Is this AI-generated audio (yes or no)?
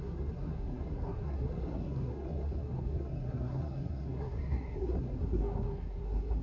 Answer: yes